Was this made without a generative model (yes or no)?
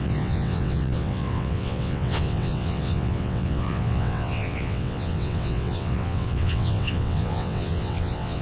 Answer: no